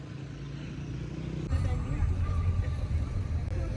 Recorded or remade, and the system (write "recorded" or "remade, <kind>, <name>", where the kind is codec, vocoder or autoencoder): recorded